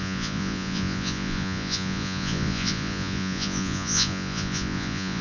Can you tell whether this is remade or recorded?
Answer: remade